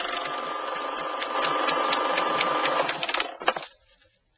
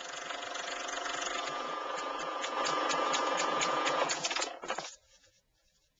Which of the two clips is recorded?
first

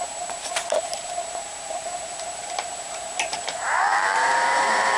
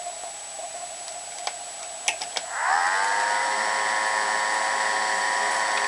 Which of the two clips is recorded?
second